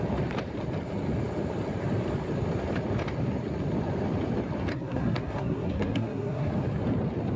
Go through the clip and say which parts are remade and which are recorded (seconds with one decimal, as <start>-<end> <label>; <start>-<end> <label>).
0.0-4.7 recorded; 4.7-6.5 remade; 6.5-7.4 recorded